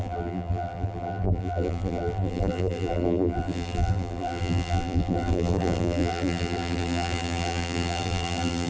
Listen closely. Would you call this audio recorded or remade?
remade